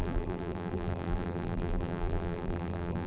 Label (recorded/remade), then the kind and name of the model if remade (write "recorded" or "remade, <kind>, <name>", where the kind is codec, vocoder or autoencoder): remade, vocoder, BigVGAN v2